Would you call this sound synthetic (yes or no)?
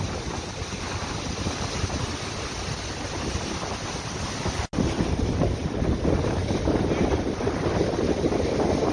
no